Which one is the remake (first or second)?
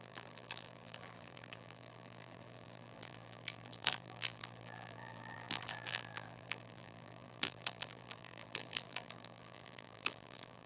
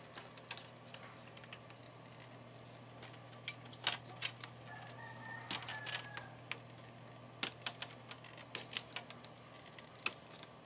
first